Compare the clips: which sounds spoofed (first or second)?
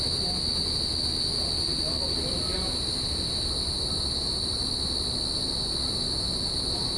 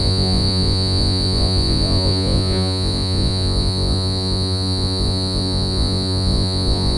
second